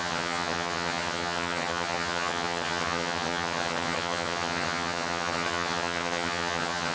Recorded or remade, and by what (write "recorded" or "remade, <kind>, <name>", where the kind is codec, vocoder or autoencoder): remade, vocoder, HiFi-GAN